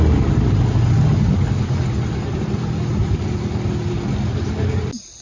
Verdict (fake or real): real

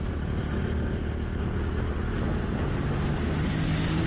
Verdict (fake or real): real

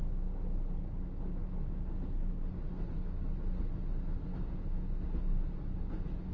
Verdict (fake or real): real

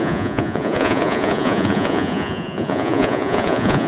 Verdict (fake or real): fake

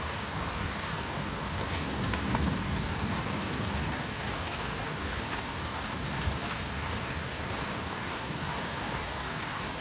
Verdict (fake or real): fake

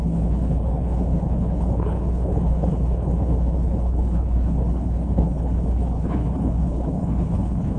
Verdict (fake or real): fake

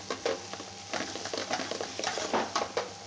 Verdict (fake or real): real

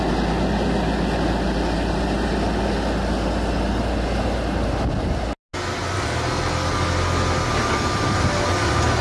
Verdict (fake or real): real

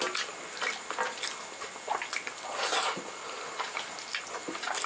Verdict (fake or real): real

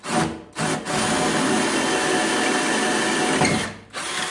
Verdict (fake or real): real